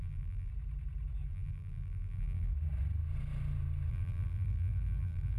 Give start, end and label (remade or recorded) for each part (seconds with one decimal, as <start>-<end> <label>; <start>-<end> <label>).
0.0-0.5 remade; 0.5-1.3 recorded; 1.3-2.5 remade; 2.5-3.9 recorded; 3.9-5.4 remade

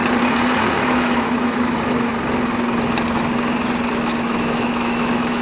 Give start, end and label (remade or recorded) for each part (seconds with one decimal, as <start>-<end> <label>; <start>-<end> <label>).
0.0-0.7 recorded; 0.7-2.1 remade; 2.1-3.9 recorded; 3.9-5.4 remade

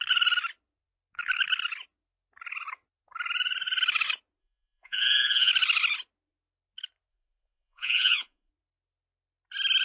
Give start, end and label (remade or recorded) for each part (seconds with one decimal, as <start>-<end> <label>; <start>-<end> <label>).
0.0-4.4 recorded; 4.4-5.5 remade; 5.5-7.1 recorded; 7.1-8.5 remade; 8.5-9.8 recorded

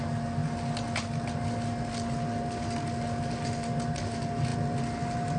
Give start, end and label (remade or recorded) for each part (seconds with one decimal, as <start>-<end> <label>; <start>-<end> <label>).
0.0-5.4 recorded

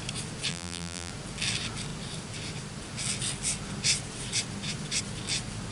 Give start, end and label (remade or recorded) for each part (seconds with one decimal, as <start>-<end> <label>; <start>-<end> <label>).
0.0-0.5 recorded; 0.5-1.1 remade; 1.1-5.7 recorded

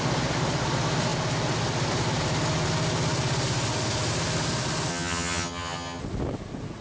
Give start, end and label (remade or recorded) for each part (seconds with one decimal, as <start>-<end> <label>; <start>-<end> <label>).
0.0-4.9 recorded; 4.9-6.0 remade; 6.0-6.8 recorded